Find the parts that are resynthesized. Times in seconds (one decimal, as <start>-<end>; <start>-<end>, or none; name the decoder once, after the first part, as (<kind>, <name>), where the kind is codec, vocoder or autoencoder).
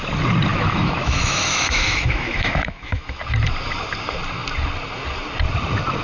0.5-3.2 (autoencoder, DAC-VAE)